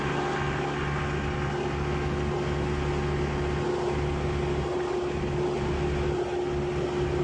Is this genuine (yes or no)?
yes